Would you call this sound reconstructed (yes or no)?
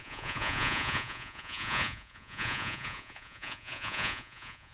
yes